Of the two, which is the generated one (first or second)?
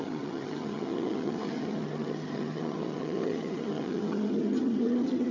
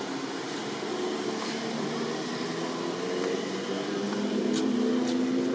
first